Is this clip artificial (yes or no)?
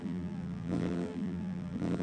yes